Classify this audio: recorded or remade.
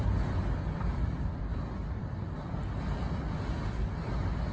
recorded